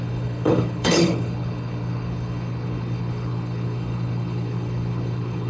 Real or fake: fake